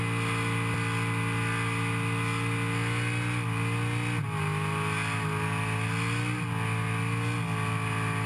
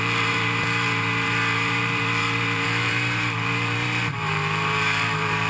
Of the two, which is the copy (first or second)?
second